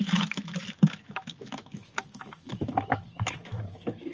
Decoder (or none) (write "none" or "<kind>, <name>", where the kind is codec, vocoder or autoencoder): autoencoder, DAC-VAE